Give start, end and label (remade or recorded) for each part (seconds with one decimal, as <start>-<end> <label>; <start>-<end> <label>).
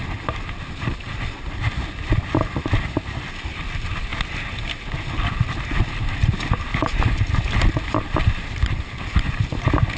0.0-10.0 recorded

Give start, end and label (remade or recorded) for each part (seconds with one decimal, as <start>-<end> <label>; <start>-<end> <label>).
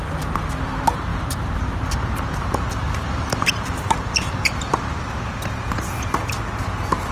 0.0-1.1 recorded; 1.1-3.8 remade; 3.8-7.1 recorded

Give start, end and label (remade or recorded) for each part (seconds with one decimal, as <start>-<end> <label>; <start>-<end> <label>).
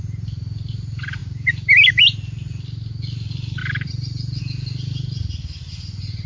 0.0-3.6 recorded; 3.6-4.4 remade; 4.4-6.3 recorded